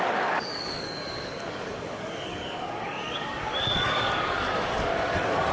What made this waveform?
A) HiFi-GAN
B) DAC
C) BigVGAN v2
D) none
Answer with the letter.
B